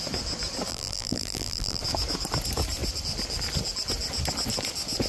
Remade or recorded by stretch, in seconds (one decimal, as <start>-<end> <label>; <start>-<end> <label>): 0.0-0.7 recorded; 0.7-1.8 remade; 1.8-5.1 recorded